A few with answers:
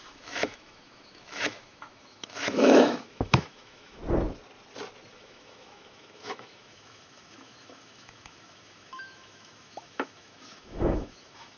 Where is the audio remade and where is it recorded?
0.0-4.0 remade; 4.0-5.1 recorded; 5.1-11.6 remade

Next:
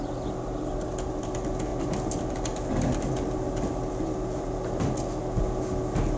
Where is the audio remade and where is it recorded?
0.0-6.2 recorded